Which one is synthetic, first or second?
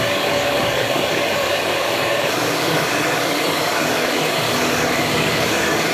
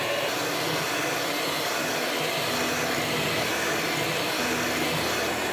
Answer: first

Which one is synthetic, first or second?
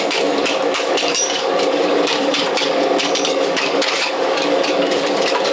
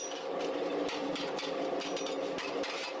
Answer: first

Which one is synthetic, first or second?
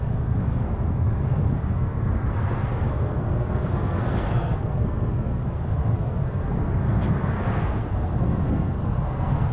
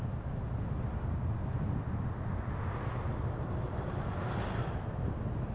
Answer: first